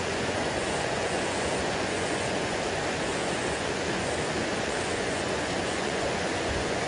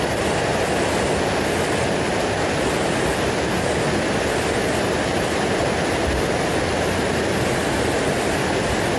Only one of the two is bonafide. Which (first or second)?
second